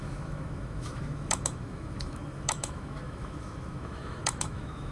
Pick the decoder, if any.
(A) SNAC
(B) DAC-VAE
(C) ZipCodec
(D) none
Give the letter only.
B